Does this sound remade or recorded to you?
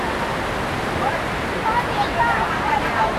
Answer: recorded